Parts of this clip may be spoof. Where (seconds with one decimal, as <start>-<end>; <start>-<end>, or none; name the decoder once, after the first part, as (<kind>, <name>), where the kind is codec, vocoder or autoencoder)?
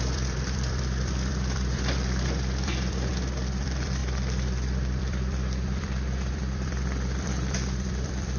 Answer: 0.0-3.1 (vocoder, BigVGAN v2); 3.6-8.4